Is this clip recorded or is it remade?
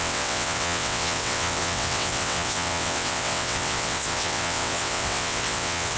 remade